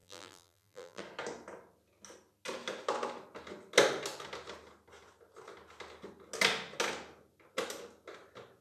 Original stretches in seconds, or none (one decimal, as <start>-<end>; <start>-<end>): 1.0-8.6